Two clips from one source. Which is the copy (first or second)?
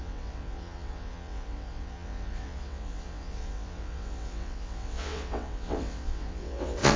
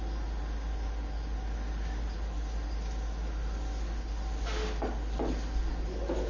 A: first